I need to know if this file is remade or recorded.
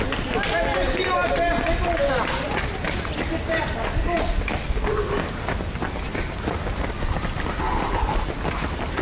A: recorded